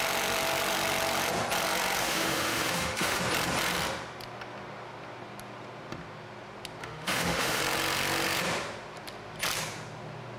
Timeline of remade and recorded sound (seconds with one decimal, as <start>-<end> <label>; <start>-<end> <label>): 0.0-2.0 recorded; 2.0-3.2 remade; 3.2-6.8 recorded; 6.8-7.6 remade; 7.6-10.4 recorded